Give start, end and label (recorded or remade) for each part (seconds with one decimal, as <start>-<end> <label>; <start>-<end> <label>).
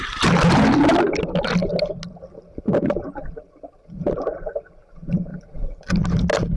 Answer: 0.0-5.3 recorded; 5.3-6.0 remade; 6.0-6.6 recorded